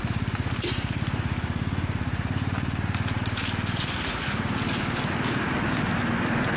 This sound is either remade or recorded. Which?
recorded